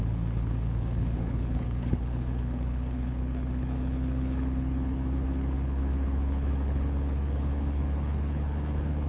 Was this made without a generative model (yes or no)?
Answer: no